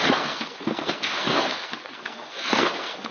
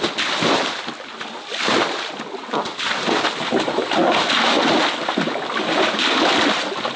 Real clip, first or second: second